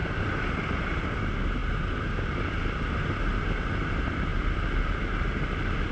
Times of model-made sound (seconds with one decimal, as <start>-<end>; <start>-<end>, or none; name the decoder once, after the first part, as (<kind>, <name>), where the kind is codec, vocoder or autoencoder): 0.0-1.2 (vocoder, BigVGAN v2); 4.3-4.9